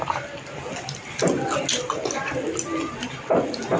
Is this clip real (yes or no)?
yes